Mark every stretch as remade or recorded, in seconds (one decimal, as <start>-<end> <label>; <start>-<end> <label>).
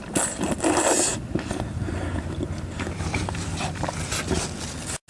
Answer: 0.0-5.1 recorded